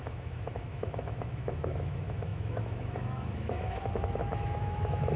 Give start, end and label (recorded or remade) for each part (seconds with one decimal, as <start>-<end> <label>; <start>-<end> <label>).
0.0-5.2 remade